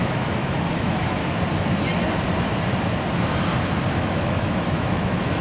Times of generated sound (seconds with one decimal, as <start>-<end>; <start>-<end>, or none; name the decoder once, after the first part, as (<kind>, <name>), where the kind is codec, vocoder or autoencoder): 0.0-1.2 (autoencoder, DAC-VAE); 3.9-5.4